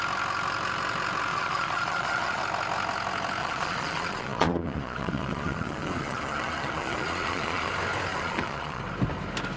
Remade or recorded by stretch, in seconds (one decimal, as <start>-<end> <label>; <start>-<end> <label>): 0.0-1.3 recorded; 1.3-2.4 remade; 2.4-3.4 recorded; 3.4-7.7 remade; 7.7-8.1 recorded; 8.1-8.8 remade; 8.8-9.6 recorded